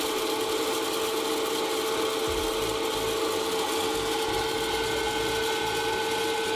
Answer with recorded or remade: recorded